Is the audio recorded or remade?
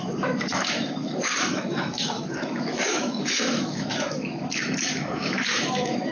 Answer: remade